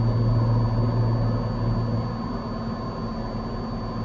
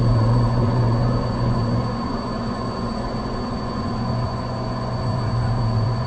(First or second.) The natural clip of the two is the first